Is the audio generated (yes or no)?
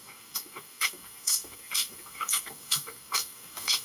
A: yes